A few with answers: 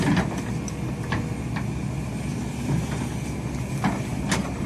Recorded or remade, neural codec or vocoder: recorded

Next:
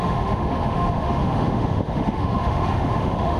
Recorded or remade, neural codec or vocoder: remade, autoencoder, DAC-VAE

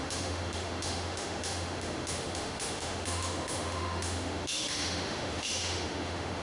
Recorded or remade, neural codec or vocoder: remade, autoencoder, DAC-VAE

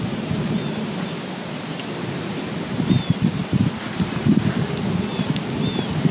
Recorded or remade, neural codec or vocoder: recorded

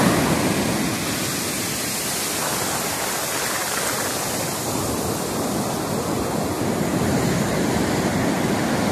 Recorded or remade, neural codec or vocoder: recorded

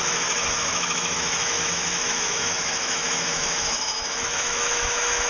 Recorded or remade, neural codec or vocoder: remade, autoencoder, DAC-VAE